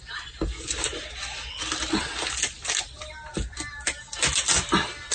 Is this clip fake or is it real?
real